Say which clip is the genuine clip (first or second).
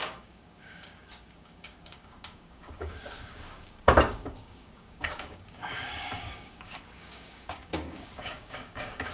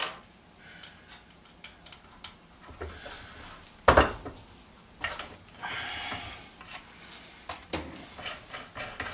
second